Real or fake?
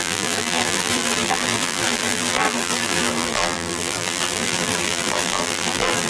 fake